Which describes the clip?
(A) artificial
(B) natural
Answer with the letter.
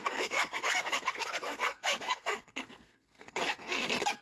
A